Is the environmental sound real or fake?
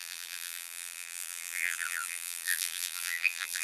fake